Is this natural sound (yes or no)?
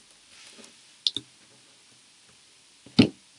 yes